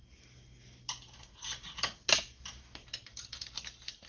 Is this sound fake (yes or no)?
no